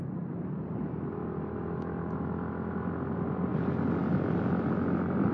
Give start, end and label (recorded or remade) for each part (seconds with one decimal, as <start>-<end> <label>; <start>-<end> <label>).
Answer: 0.0-1.2 recorded; 1.2-2.9 remade; 2.9-5.3 recorded